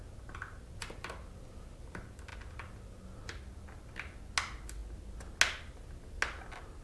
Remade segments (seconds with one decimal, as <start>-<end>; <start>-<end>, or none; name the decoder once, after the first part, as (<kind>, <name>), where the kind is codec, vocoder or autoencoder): none

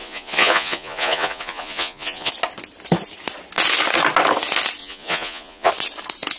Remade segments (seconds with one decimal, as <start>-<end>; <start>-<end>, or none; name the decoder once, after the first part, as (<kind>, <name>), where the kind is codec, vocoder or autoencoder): 0.0-2.3 (vocoder, Vocos); 4.8-5.7

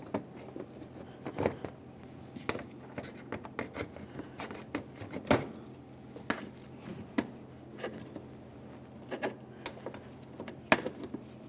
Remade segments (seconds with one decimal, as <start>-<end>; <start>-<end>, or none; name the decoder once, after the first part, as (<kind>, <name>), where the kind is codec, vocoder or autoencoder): none

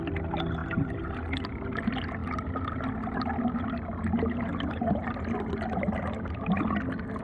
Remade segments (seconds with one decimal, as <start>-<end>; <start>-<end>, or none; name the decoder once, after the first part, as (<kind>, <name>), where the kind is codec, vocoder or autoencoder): none

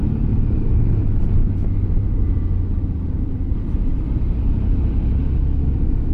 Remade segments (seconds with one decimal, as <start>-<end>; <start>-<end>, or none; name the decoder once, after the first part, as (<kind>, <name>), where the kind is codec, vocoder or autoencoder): 0.0-0.7 (vocoder, BigVGAN v2); 1.4-2.2; 2.7-5.2

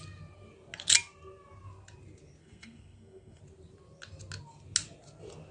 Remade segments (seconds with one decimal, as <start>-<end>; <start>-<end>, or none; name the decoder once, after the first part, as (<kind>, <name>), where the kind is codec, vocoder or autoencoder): 2.4-3.4 (codec, SNAC)

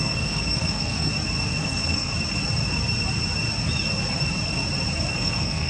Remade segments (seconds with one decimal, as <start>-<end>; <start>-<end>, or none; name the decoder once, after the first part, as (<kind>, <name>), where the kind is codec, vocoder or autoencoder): 0.0-1.1 (codec, SNAC); 1.6-2.1; 5.1-5.7